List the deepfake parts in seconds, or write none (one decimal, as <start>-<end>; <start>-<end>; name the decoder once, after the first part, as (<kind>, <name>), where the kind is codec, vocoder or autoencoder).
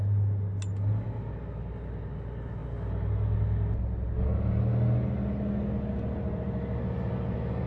none